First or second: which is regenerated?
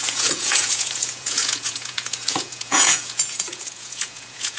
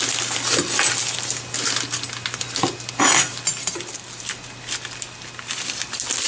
first